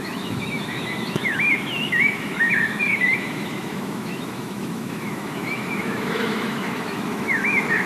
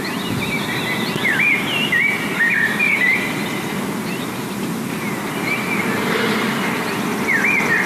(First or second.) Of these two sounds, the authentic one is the second